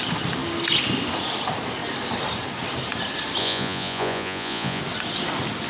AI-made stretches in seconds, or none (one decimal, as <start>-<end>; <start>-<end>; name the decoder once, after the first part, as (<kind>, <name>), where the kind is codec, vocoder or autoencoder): 3.4-4.8 (vocoder, Vocos)